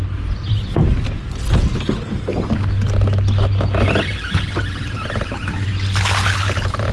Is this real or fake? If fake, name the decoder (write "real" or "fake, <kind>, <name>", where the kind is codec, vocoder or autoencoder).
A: real